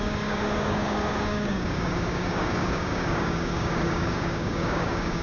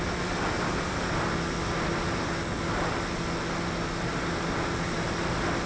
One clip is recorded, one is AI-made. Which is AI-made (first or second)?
first